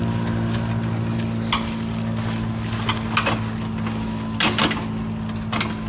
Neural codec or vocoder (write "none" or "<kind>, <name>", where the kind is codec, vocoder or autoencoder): none